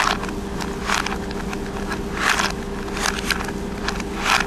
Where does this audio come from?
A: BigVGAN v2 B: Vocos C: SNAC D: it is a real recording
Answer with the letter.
D